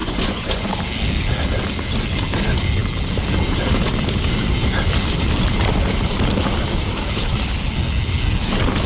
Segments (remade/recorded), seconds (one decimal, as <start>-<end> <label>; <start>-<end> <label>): 0.0-0.7 remade; 0.7-8.9 recorded